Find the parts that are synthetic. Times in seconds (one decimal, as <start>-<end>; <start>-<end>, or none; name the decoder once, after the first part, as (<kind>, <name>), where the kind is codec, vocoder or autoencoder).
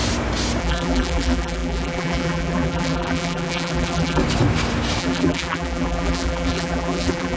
0.6-4.2 (vocoder, BigVGAN v2); 5.0-7.4